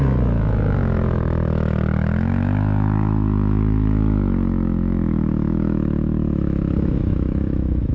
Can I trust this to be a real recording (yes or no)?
no